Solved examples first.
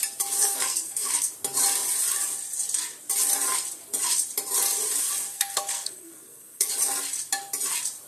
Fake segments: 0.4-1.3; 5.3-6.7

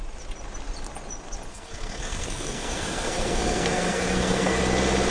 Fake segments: 1.5-4.6

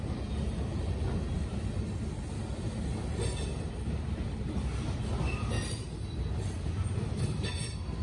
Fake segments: none